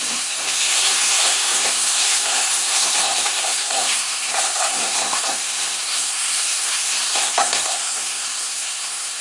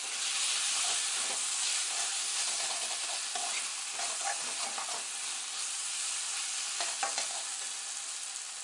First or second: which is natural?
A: second